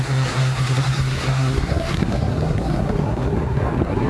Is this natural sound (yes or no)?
no